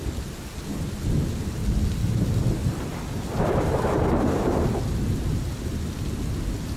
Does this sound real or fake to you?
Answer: real